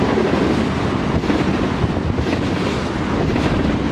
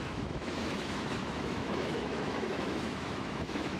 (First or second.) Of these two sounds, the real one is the first